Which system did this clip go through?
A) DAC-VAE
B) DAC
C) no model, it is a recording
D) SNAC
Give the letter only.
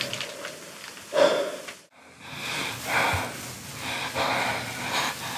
C